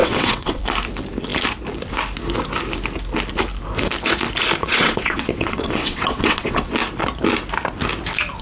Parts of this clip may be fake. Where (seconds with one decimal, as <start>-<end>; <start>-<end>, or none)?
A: 0.0-0.6; 4.6-6.7